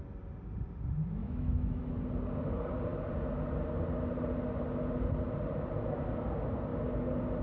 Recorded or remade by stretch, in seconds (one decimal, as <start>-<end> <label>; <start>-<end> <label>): 0.0-1.2 recorded; 1.2-1.8 remade; 1.8-7.4 recorded